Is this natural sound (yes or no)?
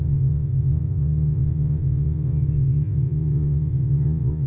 no